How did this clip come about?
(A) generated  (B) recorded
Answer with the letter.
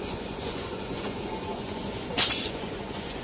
A